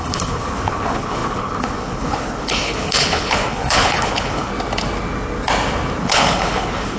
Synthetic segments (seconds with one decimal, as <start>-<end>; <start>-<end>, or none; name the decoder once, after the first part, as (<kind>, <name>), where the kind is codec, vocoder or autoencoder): 0.0-4.5 (codec, HILCodec); 6.0-7.0